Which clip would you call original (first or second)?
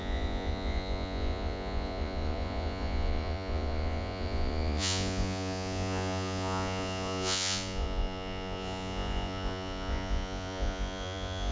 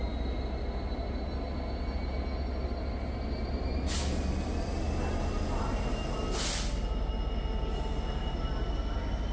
second